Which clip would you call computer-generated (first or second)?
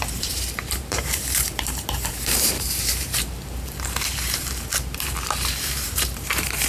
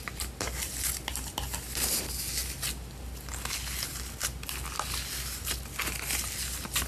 first